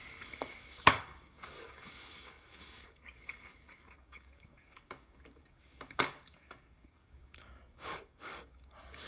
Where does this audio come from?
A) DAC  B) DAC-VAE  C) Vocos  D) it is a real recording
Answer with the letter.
A